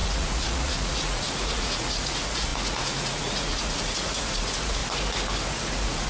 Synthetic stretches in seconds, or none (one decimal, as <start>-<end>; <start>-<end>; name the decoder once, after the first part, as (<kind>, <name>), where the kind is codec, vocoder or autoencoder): 0.0-4.8 (vocoder, Vocos); 5.5-6.1